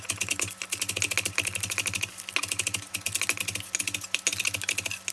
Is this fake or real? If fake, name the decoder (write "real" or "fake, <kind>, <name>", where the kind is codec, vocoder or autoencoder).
real